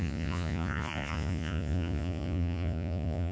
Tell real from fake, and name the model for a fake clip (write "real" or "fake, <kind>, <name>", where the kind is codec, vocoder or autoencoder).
fake, vocoder, Vocos